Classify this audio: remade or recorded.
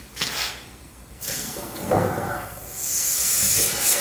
remade